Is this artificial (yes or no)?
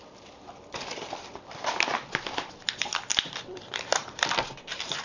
yes